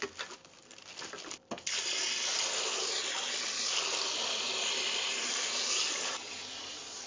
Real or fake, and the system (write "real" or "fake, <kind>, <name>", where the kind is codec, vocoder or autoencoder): real